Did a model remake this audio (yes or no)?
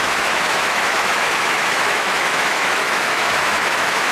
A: yes